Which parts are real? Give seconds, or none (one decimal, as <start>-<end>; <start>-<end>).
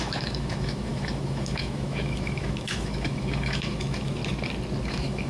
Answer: 4.2-4.8